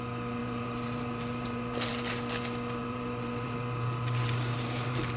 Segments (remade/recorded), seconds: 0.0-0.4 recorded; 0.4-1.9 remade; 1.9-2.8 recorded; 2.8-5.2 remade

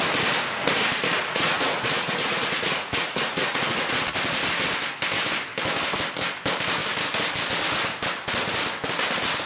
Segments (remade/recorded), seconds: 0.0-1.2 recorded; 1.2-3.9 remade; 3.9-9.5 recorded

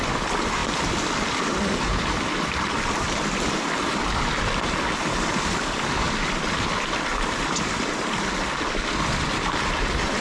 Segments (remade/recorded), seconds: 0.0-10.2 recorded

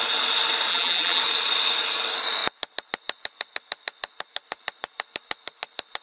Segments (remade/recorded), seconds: 0.0-0.7 recorded; 0.7-1.2 remade; 1.2-6.0 recorded